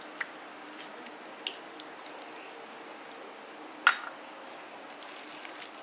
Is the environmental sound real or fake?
real